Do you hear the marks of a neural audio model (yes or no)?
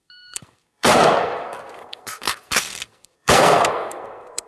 yes